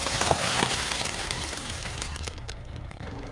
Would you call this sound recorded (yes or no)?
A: no